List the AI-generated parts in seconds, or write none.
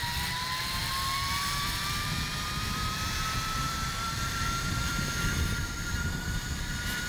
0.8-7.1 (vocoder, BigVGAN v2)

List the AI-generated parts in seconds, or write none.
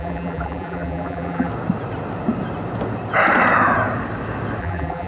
0.0-1.5 (vocoder, BigVGAN v2); 4.6-5.1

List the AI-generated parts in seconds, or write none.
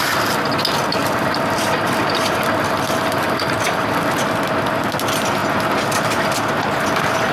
1.0-4.0 (vocoder, BigVGAN v2)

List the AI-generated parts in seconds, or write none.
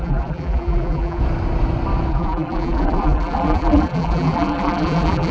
0.0-1.2 (vocoder, BigVGAN v2); 2.1-5.3